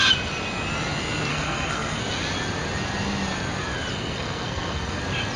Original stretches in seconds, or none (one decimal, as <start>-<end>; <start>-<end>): 0.0-1.3; 2.0-3.9; 5.0-5.4